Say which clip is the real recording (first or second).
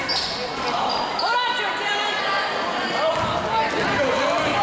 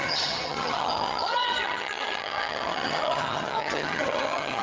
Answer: first